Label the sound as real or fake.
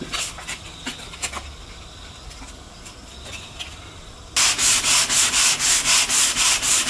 real